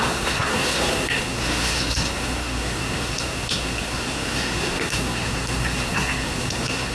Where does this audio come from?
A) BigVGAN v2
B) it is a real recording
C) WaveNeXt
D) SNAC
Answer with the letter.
D